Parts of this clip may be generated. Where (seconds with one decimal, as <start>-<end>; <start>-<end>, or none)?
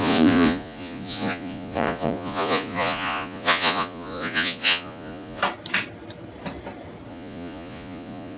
0.0-5.4; 7.1-8.4